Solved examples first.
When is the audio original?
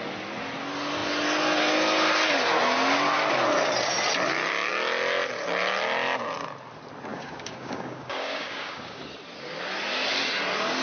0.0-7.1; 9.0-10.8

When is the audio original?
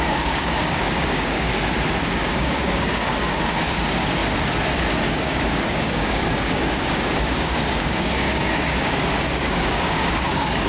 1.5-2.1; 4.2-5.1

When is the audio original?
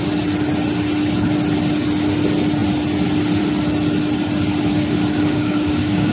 0.0-4.7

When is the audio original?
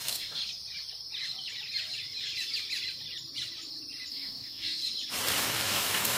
0.4-4.1; 4.8-5.4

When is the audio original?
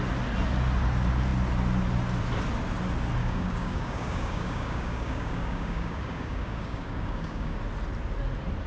0.0-3.2; 7.6-8.7